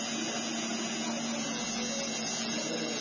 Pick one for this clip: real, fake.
real